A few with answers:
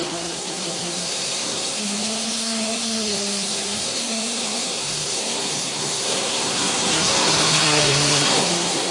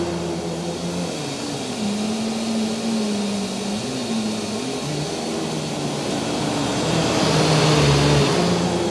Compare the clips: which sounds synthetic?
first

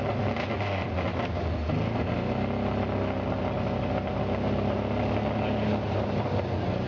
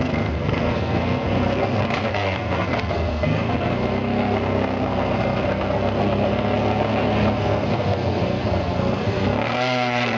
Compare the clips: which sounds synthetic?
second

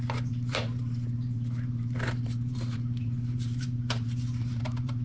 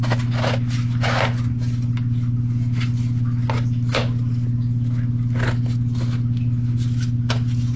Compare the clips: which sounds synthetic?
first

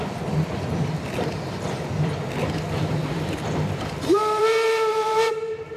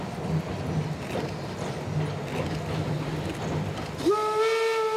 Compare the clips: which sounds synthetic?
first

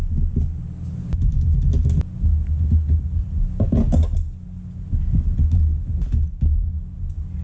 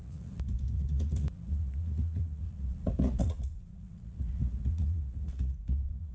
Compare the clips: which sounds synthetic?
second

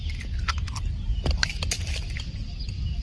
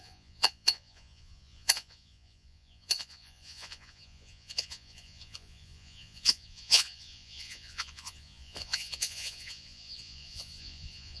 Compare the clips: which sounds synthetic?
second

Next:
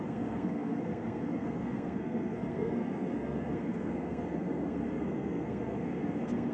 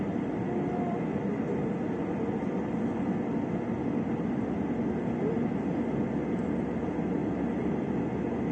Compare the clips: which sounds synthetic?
first